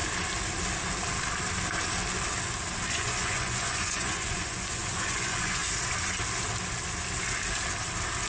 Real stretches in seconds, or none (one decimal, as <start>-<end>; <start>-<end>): 0.0-2.9; 5.6-8.3